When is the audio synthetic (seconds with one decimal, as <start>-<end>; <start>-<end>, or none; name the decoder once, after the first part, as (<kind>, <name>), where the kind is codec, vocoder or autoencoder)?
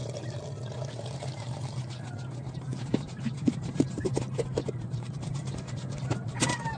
0.9-6.8 (vocoder, BigVGAN v2)